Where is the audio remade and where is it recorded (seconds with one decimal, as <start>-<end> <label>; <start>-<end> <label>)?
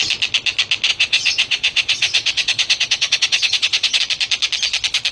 0.0-0.9 recorded; 0.9-4.0 remade; 4.0-5.1 recorded